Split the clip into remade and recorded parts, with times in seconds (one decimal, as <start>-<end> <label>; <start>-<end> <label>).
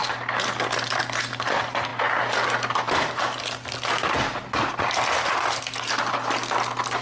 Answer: 0.0-7.0 recorded